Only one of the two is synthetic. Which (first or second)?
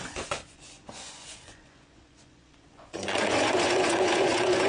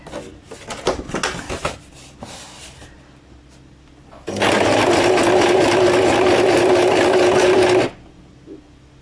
first